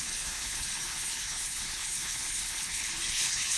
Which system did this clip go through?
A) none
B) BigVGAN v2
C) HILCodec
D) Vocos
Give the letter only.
C